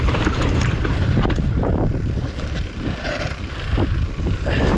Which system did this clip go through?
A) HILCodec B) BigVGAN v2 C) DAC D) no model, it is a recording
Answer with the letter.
B